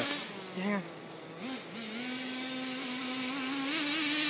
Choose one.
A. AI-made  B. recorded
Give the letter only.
B